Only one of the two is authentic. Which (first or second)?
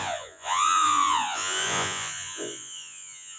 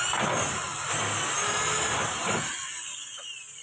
second